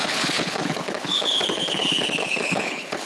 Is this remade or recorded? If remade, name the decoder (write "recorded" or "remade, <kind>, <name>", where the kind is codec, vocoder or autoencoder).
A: remade, codec, HILCodec